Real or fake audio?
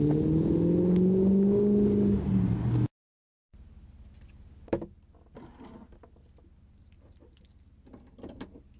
real